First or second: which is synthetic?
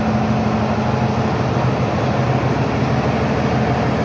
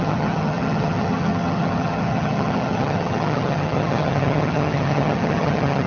second